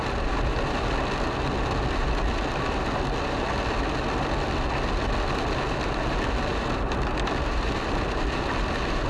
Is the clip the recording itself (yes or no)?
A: yes